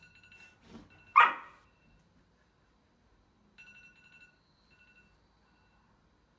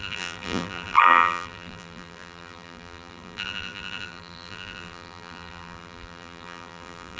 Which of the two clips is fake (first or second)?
second